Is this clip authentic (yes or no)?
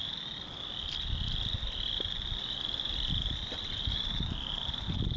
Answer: yes